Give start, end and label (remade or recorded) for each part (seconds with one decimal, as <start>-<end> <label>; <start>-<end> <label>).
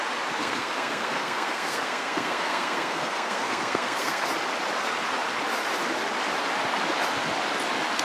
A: 0.0-0.4 recorded; 0.4-4.3 remade; 4.3-8.0 recorded